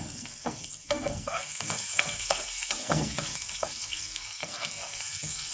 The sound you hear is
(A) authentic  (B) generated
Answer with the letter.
B